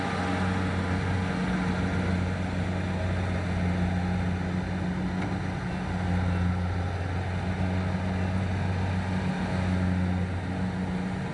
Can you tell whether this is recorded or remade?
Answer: recorded